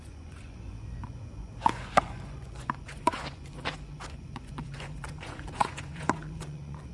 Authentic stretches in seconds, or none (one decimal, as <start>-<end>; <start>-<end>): none